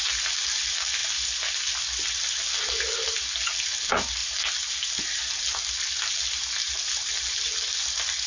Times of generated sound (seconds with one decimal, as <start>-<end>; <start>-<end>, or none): none